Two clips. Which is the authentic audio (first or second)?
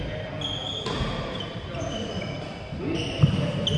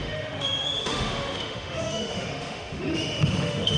first